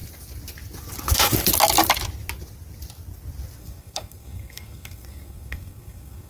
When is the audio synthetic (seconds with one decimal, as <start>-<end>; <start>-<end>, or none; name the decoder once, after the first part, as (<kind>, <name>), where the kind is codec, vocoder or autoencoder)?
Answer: 3.6-6.3 (codec, SNAC)